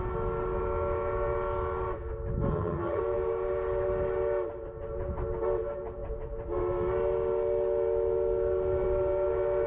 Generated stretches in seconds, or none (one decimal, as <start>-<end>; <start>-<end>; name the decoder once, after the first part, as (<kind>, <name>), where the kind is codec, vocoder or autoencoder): 2.5-3.0 (vocoder, HiFi-GAN)